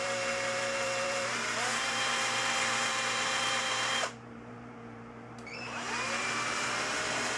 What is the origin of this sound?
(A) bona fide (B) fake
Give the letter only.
B